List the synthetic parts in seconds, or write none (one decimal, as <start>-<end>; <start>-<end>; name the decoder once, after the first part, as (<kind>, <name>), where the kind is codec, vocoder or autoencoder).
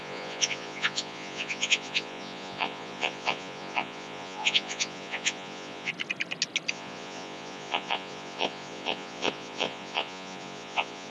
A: 0.0-5.9 (vocoder, Vocos); 6.7-11.1